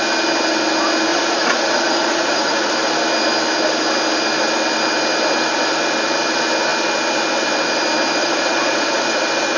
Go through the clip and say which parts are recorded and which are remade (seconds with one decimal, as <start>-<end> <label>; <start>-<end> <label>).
0.0-1.1 recorded; 1.1-2.7 remade; 2.7-8.2 recorded; 8.2-9.2 remade; 9.2-9.6 recorded